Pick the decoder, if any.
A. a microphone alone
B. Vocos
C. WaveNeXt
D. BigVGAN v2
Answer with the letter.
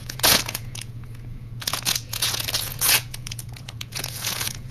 B